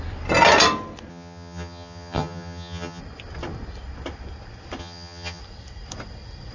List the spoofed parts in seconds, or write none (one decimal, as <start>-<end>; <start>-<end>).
1.1-3.0; 4.8-5.4